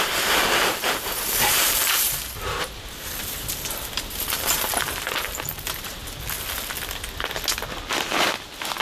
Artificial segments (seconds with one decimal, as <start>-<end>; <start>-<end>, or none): 0.0-6.0